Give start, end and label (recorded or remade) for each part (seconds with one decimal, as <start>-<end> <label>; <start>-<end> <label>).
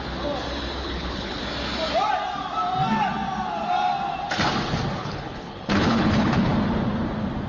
0.0-0.8 recorded; 0.8-1.4 remade; 1.4-5.0 recorded; 5.0-6.5 remade; 6.5-7.5 recorded